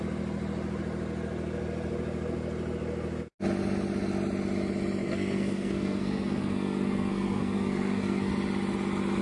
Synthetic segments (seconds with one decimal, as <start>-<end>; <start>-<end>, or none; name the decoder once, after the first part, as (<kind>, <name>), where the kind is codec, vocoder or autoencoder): 5.0-8.3 (codec, SNAC)